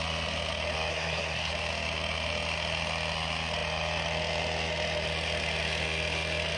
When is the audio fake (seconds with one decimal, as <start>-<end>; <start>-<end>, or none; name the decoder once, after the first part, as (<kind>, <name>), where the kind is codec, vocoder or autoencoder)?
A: 0.9-1.5 (codec, SNAC)